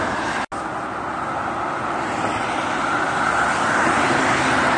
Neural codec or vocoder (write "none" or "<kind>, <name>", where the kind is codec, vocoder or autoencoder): none